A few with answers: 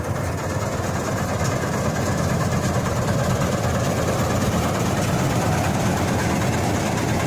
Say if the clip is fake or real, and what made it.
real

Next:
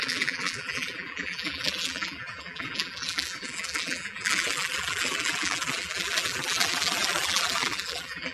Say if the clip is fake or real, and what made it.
fake, vocoder, BigVGAN v2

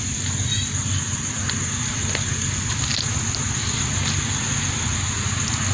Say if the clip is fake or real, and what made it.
real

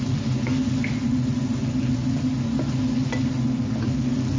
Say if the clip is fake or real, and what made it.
real